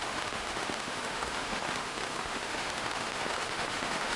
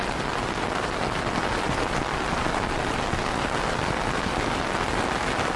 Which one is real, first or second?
second